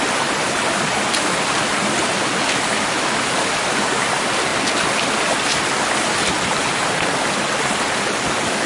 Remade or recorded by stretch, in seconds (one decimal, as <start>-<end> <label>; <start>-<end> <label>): 0.0-8.7 recorded